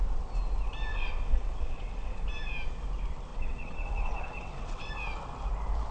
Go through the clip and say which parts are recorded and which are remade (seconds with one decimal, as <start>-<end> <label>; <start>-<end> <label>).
0.0-0.9 recorded; 0.9-2.2 remade; 2.2-3.3 recorded; 3.3-4.9 remade; 4.9-5.9 recorded